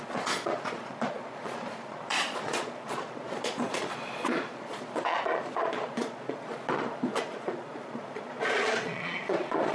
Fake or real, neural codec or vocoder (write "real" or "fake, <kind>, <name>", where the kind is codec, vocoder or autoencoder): fake, vocoder, Vocos